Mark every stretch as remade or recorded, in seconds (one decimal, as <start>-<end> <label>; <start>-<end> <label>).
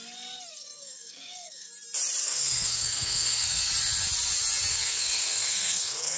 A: 0.0-0.5 recorded; 0.5-1.7 remade; 1.7-2.2 recorded; 2.2-3.7 remade; 3.7-4.7 recorded; 4.7-6.2 remade